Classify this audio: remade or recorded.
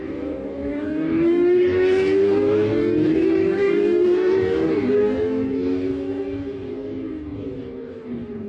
remade